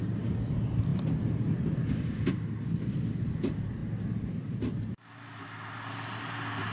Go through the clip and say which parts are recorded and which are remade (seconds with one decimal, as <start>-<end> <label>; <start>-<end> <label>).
0.0-6.7 recorded